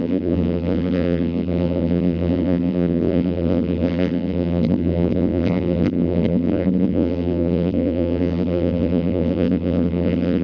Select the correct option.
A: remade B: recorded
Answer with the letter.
A